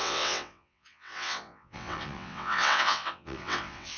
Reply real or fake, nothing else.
fake